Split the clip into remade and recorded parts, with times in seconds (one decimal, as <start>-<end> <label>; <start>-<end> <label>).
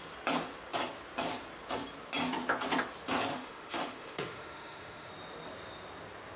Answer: 0.0-3.3 recorded; 3.3-5.1 remade; 5.1-6.4 recorded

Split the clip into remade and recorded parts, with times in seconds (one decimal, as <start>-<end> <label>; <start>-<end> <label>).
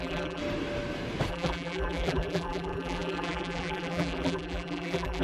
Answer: 0.0-0.4 remade; 0.4-1.3 recorded; 1.3-5.2 remade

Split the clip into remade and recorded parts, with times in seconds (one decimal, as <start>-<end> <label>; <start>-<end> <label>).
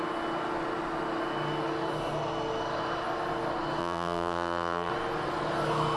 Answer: 0.0-3.8 recorded; 3.8-4.9 remade; 4.9-6.0 recorded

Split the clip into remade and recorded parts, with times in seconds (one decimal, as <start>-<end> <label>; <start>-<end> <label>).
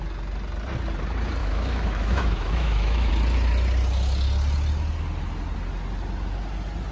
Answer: 0.0-1.4 recorded; 1.4-3.1 remade; 3.1-6.9 recorded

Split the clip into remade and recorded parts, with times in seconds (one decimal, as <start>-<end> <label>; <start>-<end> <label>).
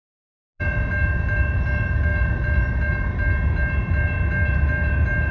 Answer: 0.0-5.3 recorded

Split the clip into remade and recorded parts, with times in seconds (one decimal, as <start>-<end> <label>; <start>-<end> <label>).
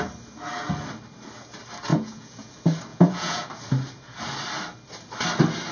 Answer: 0.0-1.9 recorded; 1.9-2.5 remade; 2.5-2.9 recorded; 2.9-3.5 remade; 3.5-5.7 recorded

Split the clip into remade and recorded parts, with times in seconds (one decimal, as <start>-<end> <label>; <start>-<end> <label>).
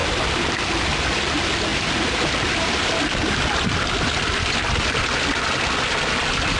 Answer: 0.0-1.7 recorded; 1.7-5.7 remade; 5.7-6.6 recorded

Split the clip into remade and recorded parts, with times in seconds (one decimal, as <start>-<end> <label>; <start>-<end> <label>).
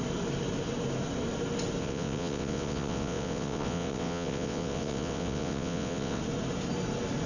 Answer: 0.0-1.8 recorded; 1.8-6.2 remade; 6.2-7.3 recorded